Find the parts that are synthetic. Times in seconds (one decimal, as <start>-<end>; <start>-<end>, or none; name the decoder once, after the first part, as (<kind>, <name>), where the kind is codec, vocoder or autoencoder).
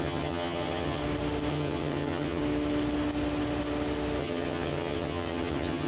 0.0-1.0 (vocoder, HiFi-GAN); 1.5-2.4; 4.2-5.9